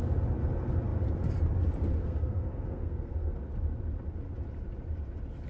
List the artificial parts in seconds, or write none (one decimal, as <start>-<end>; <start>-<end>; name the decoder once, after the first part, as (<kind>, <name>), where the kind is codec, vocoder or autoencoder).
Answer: 2.0-3.3 (codec, SNAC)